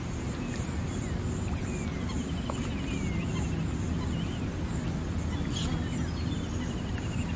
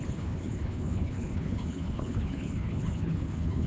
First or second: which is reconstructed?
second